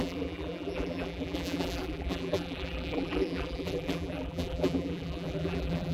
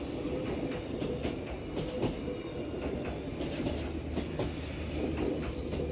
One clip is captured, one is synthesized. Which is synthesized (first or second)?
first